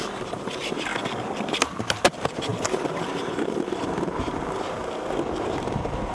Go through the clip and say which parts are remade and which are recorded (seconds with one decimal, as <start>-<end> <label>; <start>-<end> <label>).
0.0-0.9 remade; 0.9-1.5 recorded; 1.5-4.8 remade; 4.8-5.4 recorded; 5.4-6.1 remade